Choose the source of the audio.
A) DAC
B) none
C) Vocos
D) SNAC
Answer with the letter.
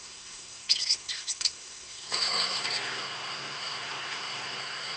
D